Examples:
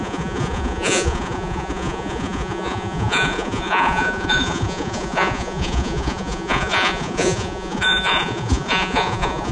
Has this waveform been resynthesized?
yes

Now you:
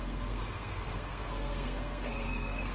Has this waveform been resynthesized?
yes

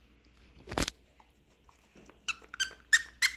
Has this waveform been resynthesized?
no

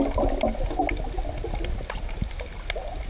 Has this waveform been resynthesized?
no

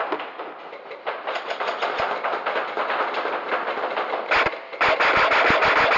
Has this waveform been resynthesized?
no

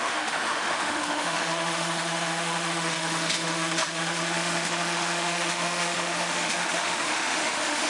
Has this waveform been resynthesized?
yes